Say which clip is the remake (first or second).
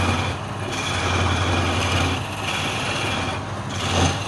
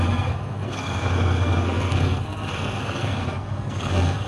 second